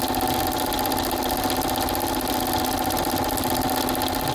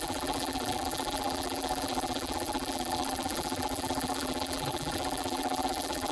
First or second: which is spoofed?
second